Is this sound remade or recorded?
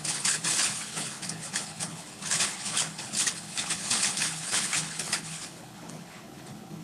remade